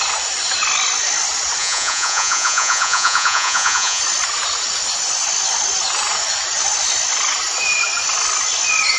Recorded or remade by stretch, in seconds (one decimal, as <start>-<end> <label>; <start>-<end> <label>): 0.0-1.6 recorded; 1.6-4.0 remade; 4.0-9.0 recorded